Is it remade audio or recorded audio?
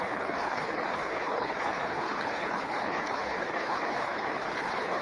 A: remade